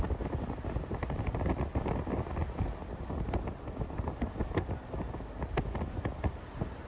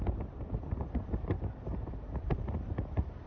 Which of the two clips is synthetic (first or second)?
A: second